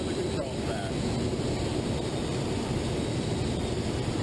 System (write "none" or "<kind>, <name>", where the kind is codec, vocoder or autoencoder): vocoder, BigVGAN v2